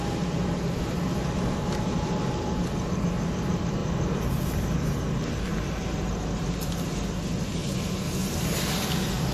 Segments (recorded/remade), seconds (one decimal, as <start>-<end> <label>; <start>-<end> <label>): 0.0-5.5 remade; 5.5-6.8 recorded; 6.8-7.6 remade; 7.6-8.2 recorded; 8.2-9.3 remade